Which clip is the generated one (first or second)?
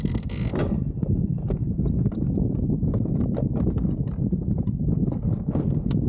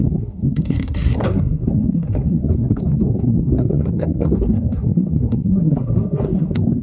second